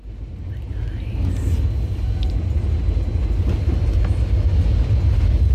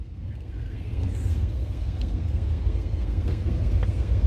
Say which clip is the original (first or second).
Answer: first